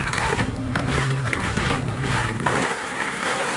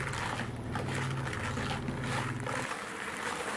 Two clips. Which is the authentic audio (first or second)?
second